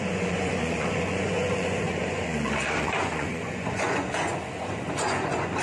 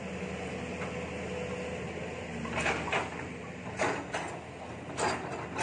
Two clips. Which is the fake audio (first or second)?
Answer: first